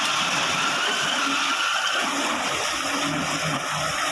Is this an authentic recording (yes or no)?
no